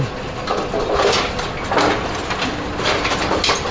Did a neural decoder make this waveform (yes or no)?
no